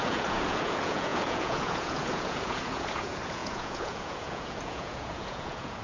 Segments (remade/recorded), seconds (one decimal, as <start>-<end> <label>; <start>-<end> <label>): 0.0-5.8 remade